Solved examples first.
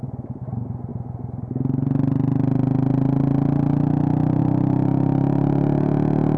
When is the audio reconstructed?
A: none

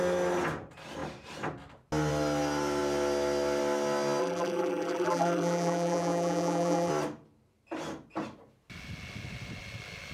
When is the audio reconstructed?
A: 4.2-6.9 (vocoder, BigVGAN v2)

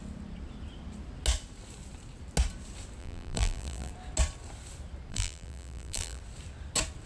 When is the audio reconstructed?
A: 3.0-3.9 (vocoder, BigVGAN v2); 5.1-6.2

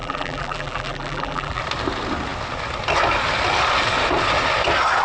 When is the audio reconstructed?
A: 0.0-1.6 (vocoder, BigVGAN v2)